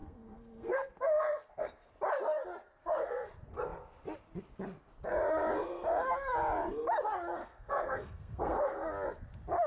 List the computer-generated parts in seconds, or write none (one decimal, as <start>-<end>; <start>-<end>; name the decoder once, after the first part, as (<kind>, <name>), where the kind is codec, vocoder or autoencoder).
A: 0.0-1.9 (codec, SNAC); 2.8-3.3; 7.4-8.9